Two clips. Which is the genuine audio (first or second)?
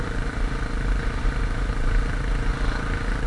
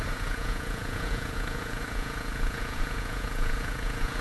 first